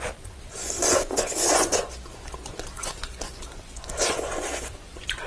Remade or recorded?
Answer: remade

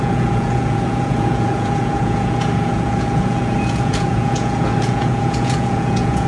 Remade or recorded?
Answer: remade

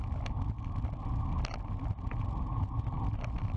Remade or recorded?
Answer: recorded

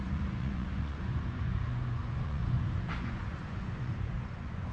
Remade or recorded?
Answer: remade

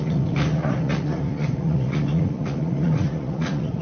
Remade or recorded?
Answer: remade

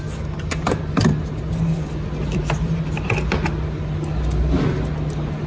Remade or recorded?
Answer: recorded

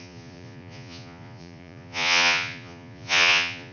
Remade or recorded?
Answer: remade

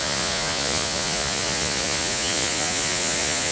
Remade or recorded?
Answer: remade